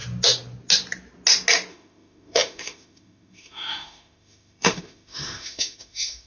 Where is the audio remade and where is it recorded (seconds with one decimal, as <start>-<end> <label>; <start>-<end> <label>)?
0.0-1.7 recorded; 1.7-6.3 remade